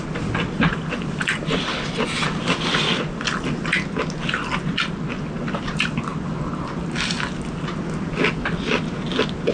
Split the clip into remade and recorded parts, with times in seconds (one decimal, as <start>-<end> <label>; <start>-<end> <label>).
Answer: 0.0-9.5 recorded